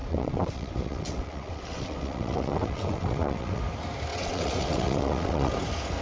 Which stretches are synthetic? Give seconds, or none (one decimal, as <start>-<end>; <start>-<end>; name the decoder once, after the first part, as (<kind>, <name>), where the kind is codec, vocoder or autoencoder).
0.0-3.6 (vocoder, WaveNeXt); 4.1-5.5